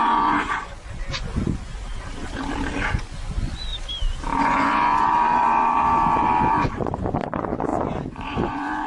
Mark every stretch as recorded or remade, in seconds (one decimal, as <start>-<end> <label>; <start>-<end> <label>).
0.0-1.7 remade; 1.7-2.7 recorded; 2.7-3.7 remade; 3.7-4.4 recorded; 4.4-8.9 remade